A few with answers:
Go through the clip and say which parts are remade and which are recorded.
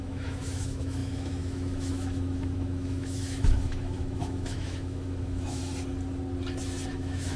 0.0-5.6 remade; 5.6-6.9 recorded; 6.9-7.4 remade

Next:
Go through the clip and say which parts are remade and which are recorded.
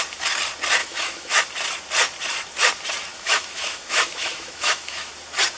0.0-0.8 recorded; 0.8-1.4 remade; 1.4-3.1 recorded; 3.1-5.1 remade; 5.1-5.6 recorded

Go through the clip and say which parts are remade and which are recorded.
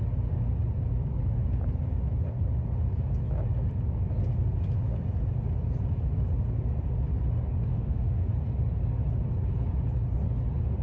0.0-7.7 recorded; 7.7-8.3 remade; 8.3-10.8 recorded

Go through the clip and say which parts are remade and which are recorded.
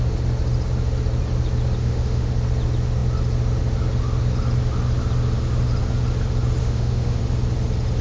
0.0-1.8 recorded; 1.8-2.3 remade; 2.3-6.6 recorded; 6.6-7.2 remade; 7.2-8.0 recorded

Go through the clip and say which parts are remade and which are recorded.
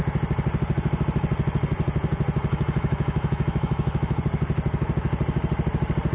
0.0-2.5 recorded; 2.5-4.2 remade; 4.2-6.1 recorded